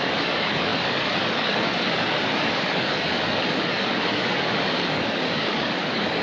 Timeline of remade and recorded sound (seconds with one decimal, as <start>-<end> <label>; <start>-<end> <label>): 0.0-6.2 remade